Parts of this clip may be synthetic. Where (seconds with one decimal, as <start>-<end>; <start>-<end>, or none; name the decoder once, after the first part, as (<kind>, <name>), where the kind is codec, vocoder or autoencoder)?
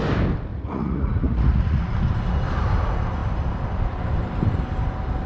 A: 0.5-2.0 (vocoder, Vocos)